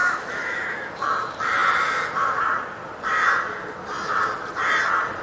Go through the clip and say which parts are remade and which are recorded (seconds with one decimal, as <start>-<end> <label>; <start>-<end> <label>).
0.0-0.9 remade; 0.9-5.2 recorded